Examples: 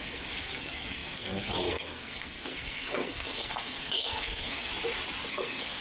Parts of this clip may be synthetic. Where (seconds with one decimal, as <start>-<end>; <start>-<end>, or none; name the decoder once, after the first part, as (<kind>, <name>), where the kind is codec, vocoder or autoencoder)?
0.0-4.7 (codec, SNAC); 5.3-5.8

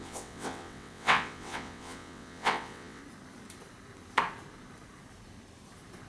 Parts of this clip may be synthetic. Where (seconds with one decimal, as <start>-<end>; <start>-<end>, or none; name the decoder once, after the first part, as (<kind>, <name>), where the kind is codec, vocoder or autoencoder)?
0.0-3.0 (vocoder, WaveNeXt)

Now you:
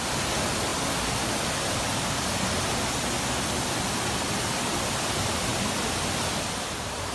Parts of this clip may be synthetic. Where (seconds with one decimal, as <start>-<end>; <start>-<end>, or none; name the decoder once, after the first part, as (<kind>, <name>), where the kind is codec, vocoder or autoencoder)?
none

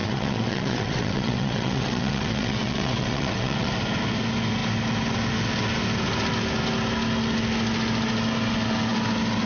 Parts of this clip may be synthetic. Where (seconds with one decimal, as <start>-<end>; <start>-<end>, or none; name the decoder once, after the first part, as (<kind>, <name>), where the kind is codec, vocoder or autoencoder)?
0.0-3.7 (vocoder, WaveNeXt)

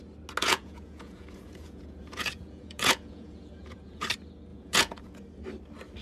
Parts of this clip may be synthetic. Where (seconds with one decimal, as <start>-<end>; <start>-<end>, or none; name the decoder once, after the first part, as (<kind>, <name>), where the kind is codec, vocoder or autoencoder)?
0.4-4.0 (vocoder, Vocos); 4.5-5.2

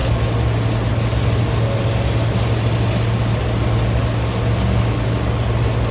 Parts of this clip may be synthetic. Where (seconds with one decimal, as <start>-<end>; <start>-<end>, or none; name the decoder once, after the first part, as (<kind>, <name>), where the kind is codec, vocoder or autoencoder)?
none

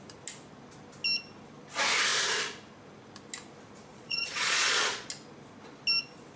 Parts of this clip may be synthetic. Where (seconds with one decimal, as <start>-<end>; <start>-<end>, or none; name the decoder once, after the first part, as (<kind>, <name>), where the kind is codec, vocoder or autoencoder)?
3.9-5.1 (vocoder, Vocos)